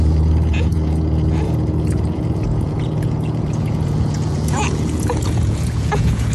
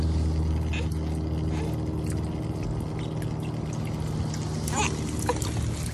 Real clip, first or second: second